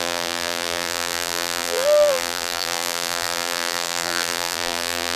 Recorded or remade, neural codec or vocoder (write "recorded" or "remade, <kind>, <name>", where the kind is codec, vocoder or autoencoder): remade, vocoder, BigVGAN v2